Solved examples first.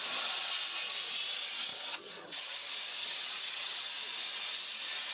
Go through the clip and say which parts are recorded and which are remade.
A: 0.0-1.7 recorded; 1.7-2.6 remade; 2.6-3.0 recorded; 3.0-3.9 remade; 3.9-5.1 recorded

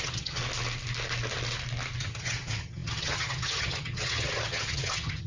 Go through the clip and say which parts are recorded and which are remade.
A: 0.0-0.4 remade; 0.4-2.0 recorded; 2.0-5.3 remade

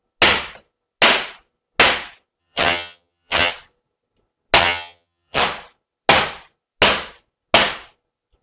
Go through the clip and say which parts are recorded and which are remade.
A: 0.0-2.4 recorded; 2.4-3.5 remade; 3.5-4.6 recorded; 4.6-5.4 remade; 5.4-8.4 recorded

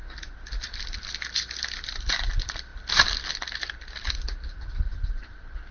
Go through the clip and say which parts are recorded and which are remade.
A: 0.0-5.7 recorded